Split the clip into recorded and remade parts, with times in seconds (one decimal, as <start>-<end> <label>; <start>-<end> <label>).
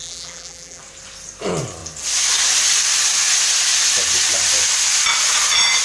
0.0-0.8 remade; 0.8-5.8 recorded